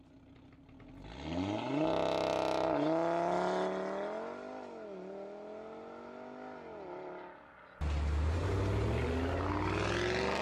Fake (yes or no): no